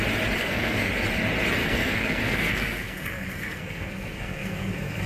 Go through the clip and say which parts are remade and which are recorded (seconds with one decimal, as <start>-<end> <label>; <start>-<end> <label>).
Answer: 0.0-0.4 recorded; 0.4-0.9 remade; 0.9-1.6 recorded; 1.6-5.1 remade